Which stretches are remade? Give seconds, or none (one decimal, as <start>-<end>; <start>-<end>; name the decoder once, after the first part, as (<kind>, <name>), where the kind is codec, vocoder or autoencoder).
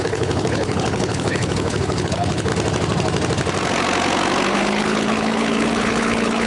0.0-2.5 (codec, HILCodec); 4.5-6.5